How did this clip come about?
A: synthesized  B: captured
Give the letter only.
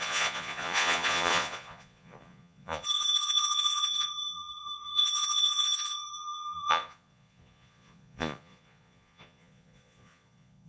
A